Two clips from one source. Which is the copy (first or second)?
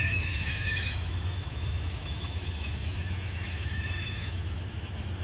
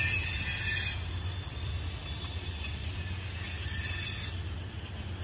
first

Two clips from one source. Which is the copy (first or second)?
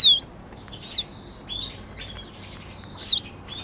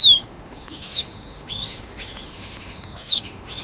second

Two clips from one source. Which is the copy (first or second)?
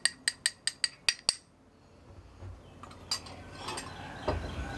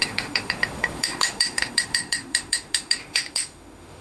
second